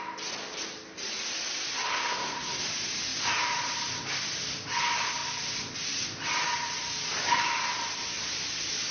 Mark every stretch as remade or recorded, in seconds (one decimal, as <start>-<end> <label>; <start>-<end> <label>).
0.0-1.9 recorded; 1.9-2.6 remade; 2.6-8.9 recorded